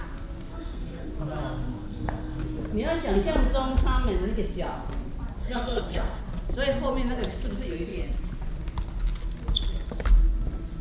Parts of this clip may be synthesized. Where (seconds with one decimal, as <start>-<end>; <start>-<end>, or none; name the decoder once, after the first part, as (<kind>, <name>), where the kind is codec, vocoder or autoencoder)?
0.5-1.1 (codec, SNAC); 1.8-2.4; 5.4-6.2